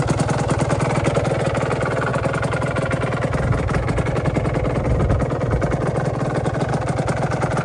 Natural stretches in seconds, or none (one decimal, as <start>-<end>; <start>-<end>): 0.0-7.6